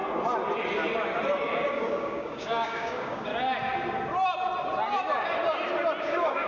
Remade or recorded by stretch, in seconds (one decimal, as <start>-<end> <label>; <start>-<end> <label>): 0.0-1.7 recorded; 1.7-3.3 remade; 3.3-6.0 recorded; 6.0-6.5 remade